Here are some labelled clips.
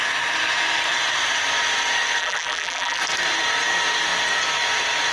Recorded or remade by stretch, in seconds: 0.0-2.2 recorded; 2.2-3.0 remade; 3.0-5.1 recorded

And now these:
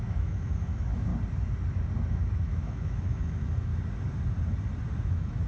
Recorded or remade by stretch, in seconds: 0.0-1.1 remade; 1.1-2.1 recorded; 2.1-3.7 remade; 3.7-5.0 recorded; 5.0-5.5 remade

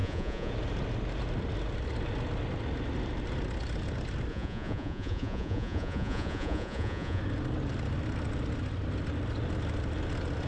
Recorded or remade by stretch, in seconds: 0.0-0.5 remade; 0.5-4.3 recorded; 4.3-7.2 remade; 7.2-10.5 recorded